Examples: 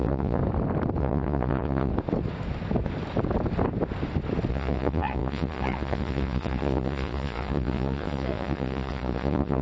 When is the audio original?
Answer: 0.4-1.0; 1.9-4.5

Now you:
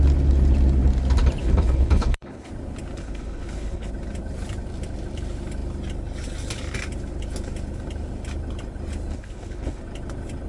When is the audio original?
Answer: 0.0-1.4; 2.5-3.0; 3.9-9.1; 9.8-10.5